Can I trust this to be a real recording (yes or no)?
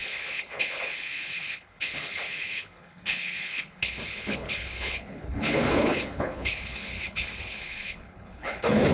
no